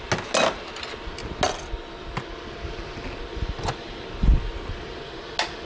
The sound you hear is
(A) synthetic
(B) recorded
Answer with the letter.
B